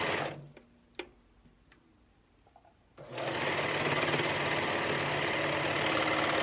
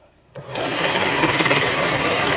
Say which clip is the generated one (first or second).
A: second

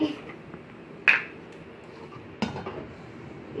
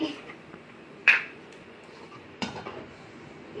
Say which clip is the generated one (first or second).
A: second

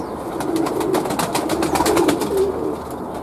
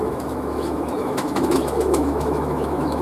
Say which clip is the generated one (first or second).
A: second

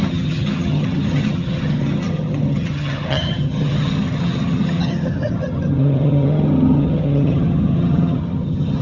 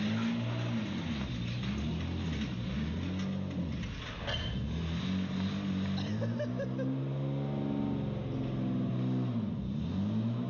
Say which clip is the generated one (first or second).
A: first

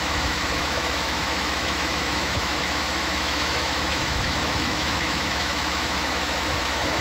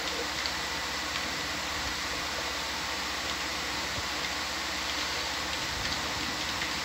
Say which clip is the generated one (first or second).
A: first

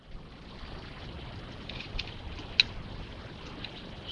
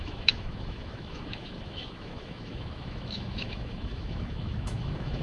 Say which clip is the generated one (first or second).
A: second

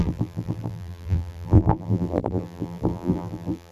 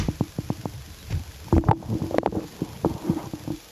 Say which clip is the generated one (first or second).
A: first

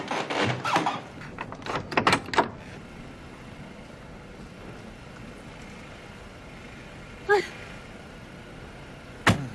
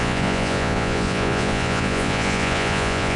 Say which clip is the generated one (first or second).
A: second